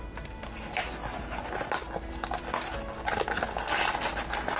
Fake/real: real